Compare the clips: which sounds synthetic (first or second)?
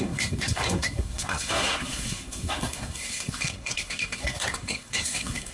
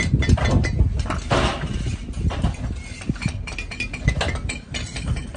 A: first